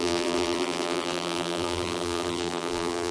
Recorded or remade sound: remade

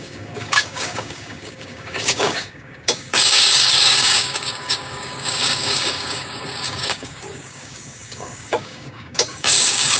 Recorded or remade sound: remade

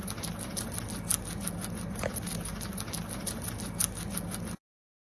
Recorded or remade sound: recorded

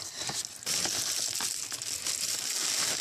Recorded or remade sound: recorded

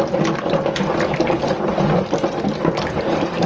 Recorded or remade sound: recorded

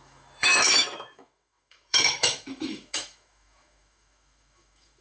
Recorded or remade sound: remade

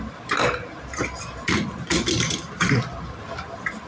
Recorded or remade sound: recorded